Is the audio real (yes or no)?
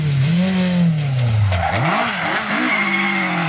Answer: yes